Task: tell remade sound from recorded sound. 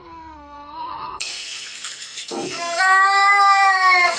remade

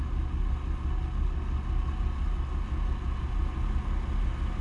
recorded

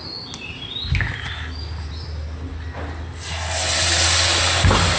recorded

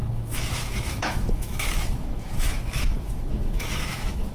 remade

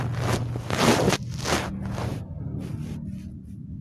recorded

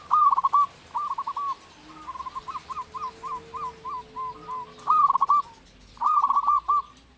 recorded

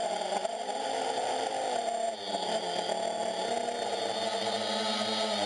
recorded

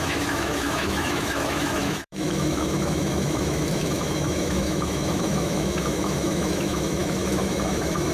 remade